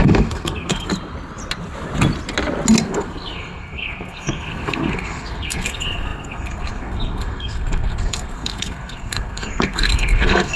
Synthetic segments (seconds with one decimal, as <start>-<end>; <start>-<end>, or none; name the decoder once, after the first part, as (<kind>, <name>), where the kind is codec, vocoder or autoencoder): 0.0-0.9 (codec, SNAC); 2.8-10.6